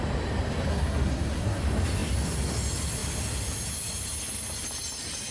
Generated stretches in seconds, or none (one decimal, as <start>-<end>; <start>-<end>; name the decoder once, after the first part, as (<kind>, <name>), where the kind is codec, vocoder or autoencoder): 0.7-1.6 (codec, SNAC)